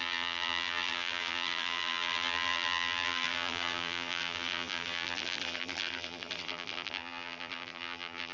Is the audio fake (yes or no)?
yes